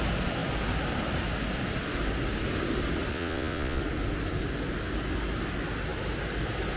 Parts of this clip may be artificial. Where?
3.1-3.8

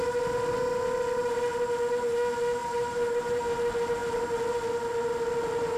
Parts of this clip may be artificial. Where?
2.6-3.4

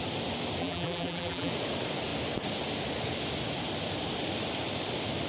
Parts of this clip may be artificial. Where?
0.6-1.5